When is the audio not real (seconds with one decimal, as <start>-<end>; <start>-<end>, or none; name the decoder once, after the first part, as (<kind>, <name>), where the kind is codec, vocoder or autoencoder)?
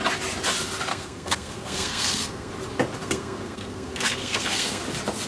0.9-2.5 (codec, SNAC); 3.0-4.8